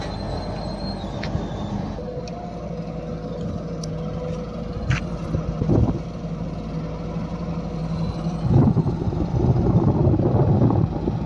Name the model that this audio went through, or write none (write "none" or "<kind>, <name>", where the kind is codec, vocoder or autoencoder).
none